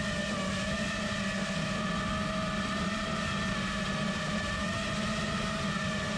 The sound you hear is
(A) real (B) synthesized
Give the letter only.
A